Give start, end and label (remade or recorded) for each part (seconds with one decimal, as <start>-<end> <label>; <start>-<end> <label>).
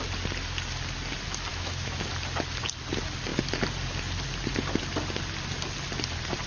0.0-1.5 recorded; 1.5-2.1 remade; 2.1-6.5 recorded